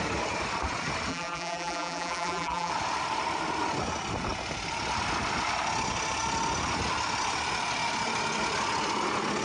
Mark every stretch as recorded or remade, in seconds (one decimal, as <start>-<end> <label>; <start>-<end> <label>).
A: 0.0-1.1 recorded; 1.1-2.7 remade; 2.7-9.4 recorded